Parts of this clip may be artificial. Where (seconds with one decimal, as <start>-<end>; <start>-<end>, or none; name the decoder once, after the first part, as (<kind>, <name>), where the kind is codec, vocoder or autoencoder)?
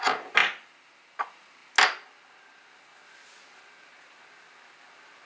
none